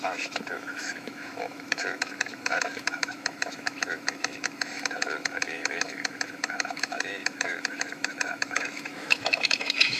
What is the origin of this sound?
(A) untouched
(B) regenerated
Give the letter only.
B